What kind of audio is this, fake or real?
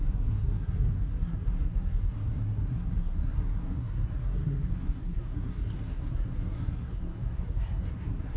fake